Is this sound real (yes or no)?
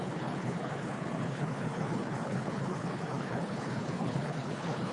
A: no